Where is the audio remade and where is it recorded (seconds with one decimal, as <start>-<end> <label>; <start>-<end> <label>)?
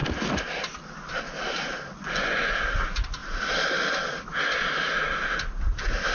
0.0-1.9 recorded; 1.9-2.5 remade; 2.5-6.1 recorded